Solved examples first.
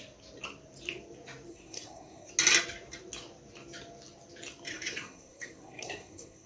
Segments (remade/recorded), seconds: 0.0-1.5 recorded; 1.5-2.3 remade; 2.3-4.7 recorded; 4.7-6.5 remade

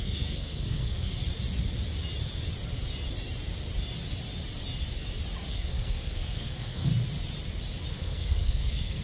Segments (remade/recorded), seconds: 0.0-1.2 remade; 1.2-5.5 recorded; 5.5-6.9 remade; 6.9-7.9 recorded; 7.9-9.0 remade

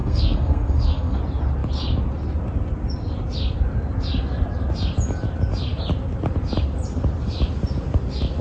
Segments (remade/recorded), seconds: 0.0-1.2 remade; 1.2-8.4 recorded